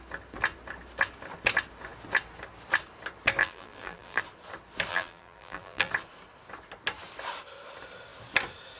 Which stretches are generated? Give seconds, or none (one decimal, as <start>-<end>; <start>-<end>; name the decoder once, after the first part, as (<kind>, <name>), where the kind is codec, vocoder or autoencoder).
3.4-4.2 (vocoder, BigVGAN v2); 4.9-5.9